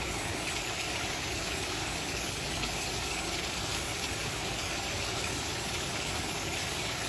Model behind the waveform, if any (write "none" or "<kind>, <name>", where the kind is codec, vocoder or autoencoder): codec, DAC